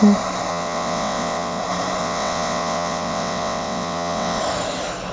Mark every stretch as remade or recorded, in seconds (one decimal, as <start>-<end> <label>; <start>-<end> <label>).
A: 0.0-0.5 recorded; 0.5-1.6 remade; 1.6-2.0 recorded; 2.0-4.4 remade; 4.4-5.1 recorded